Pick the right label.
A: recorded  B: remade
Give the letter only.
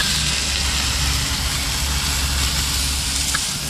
A